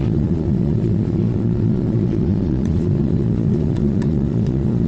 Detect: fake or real fake